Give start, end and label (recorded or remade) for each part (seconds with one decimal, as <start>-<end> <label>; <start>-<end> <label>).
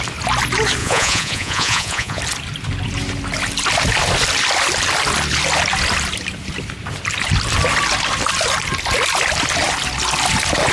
0.0-0.8 recorded; 0.8-2.2 remade; 2.2-10.7 recorded